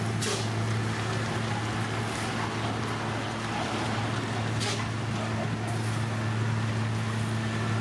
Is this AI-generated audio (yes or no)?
no